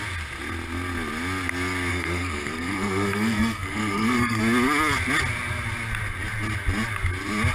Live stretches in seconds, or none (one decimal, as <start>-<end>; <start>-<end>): 0.0-1.9; 4.4-7.5